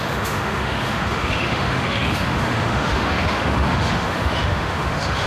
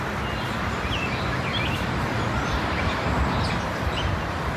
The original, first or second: second